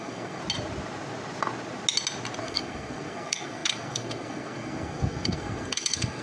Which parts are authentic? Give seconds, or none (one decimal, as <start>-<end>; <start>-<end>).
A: 0.4-2.4